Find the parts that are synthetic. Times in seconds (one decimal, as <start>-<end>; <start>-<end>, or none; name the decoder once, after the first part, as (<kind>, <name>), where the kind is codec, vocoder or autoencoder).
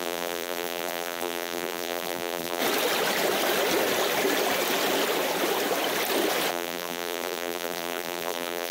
0.0-2.6 (vocoder, BigVGAN v2); 6.5-8.7